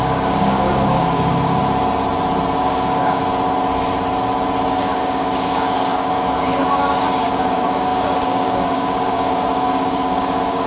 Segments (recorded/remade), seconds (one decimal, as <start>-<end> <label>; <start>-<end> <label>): 0.0-1.6 remade; 1.6-2.6 recorded; 2.6-3.2 remade; 3.2-4.7 recorded; 4.7-10.7 remade